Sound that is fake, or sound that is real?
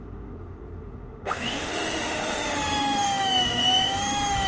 fake